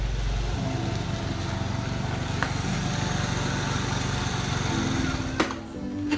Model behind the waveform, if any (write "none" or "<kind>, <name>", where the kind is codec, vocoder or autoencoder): none